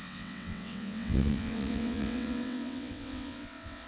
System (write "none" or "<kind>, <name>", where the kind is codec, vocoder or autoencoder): vocoder, WaveNeXt